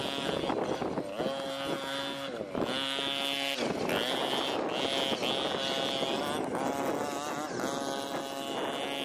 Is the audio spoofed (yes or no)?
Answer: no